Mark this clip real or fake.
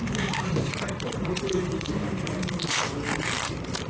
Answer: fake